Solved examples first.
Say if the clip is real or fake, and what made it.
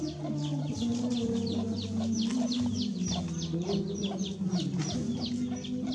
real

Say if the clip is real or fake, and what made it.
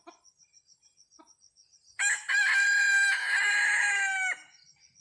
real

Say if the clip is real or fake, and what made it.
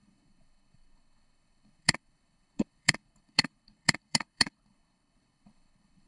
fake, codec, HILCodec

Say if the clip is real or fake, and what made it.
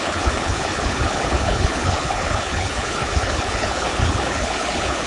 fake, codec, HILCodec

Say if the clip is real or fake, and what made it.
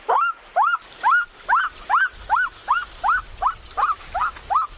real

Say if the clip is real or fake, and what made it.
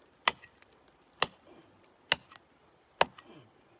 real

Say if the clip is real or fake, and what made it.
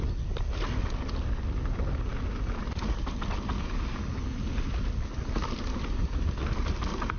real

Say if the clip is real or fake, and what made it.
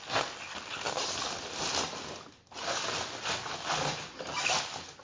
real